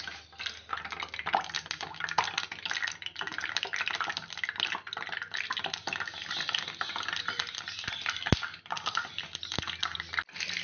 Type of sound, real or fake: real